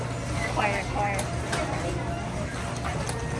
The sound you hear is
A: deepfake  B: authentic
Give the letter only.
B